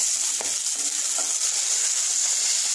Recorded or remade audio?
recorded